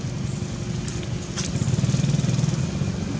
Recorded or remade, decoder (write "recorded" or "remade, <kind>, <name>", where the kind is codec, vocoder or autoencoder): recorded